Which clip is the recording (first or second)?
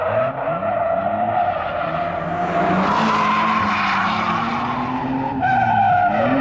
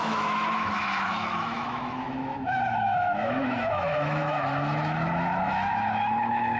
first